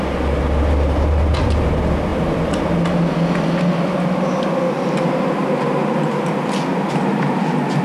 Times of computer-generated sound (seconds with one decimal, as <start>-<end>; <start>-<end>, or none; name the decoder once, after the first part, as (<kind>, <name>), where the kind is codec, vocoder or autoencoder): 6.7-7.8 (vocoder, BigVGAN v2)